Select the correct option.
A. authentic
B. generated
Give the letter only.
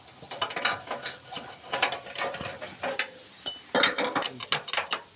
A